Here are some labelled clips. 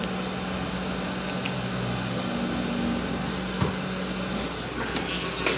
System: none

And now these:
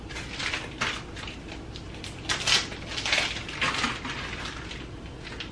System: none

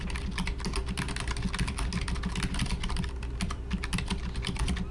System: none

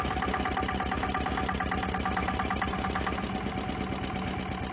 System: none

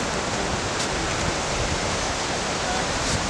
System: none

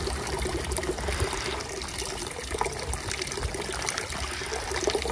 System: none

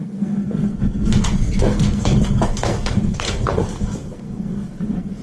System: codec, SNAC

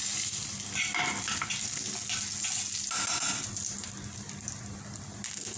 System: none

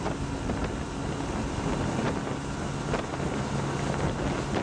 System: none